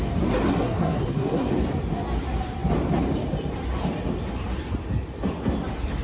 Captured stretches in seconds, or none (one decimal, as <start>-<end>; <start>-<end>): 0.0-0.5; 1.5-6.0